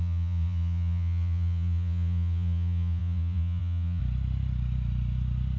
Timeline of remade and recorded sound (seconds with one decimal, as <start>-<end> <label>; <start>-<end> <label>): 0.0-4.0 remade; 4.0-5.6 recorded